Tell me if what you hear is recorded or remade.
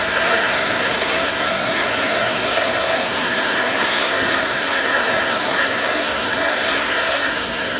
remade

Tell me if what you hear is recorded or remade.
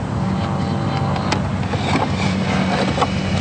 recorded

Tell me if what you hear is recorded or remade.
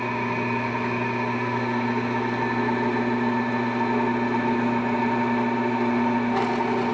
recorded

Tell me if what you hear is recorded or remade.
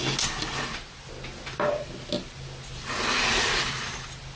recorded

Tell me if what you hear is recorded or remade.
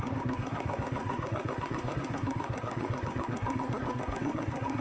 remade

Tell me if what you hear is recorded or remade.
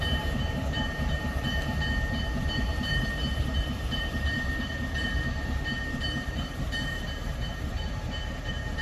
remade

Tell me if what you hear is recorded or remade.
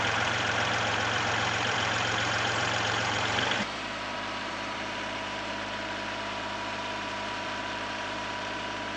remade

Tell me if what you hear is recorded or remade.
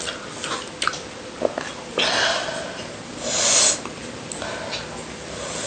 recorded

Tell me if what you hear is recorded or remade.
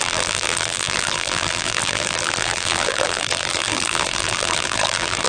remade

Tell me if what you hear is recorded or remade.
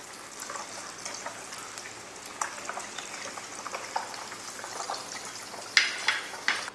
recorded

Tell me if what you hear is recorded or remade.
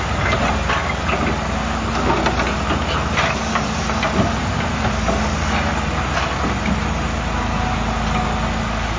recorded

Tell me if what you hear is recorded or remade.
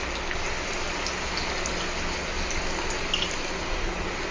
recorded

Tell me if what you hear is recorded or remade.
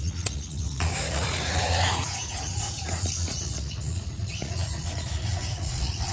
remade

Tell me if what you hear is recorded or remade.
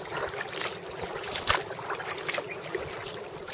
recorded